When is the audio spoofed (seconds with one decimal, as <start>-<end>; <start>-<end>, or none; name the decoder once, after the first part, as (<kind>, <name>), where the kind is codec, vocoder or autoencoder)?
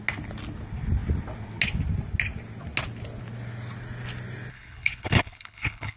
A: 4.5-6.0 (codec, HILCodec)